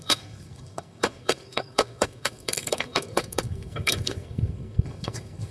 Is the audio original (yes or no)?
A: no